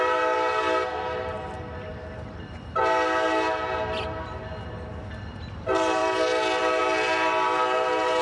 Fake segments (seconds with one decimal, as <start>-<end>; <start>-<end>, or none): none

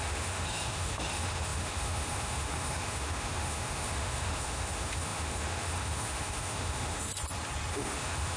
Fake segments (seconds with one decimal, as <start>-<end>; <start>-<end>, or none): 0.0-7.1; 7.7-8.4

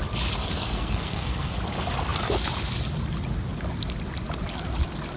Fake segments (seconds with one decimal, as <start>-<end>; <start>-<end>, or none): 0.4-1.5